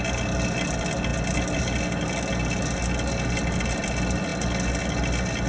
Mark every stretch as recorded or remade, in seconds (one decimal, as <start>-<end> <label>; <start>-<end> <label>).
0.0-5.5 recorded